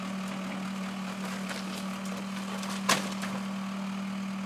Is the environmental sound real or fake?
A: real